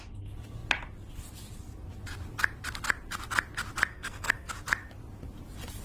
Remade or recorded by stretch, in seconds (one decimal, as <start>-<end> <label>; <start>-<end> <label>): 0.0-3.9 recorded; 3.9-4.5 remade; 4.5-5.8 recorded

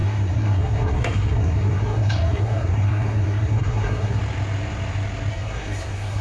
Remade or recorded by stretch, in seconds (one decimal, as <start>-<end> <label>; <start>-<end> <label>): 0.0-4.2 remade; 4.2-5.3 recorded; 5.3-6.2 remade

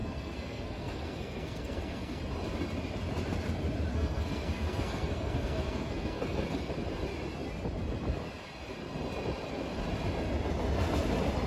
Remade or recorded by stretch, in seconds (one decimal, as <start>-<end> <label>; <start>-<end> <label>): 0.0-2.2 remade; 2.2-3.9 recorded; 3.9-6.7 remade; 6.7-11.5 recorded

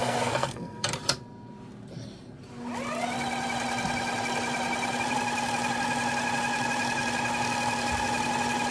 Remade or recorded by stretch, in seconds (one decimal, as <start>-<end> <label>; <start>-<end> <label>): 0.0-0.9 remade; 0.9-8.7 recorded

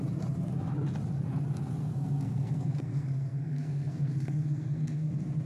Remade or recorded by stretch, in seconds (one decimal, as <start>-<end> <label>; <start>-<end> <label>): 0.0-1.8 recorded; 1.8-5.1 remade; 5.1-5.5 recorded

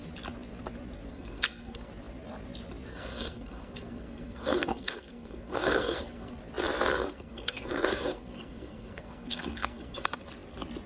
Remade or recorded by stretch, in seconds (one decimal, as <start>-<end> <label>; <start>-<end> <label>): 0.0-1.1 recorded; 1.1-1.9 remade; 1.9-2.9 recorded; 2.9-6.3 remade; 6.3-6.9 recorded; 6.9-10.2 remade; 10.2-10.9 recorded

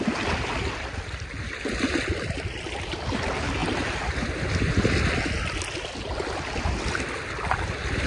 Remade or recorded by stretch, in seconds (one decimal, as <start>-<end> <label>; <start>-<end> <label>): 0.0-8.1 recorded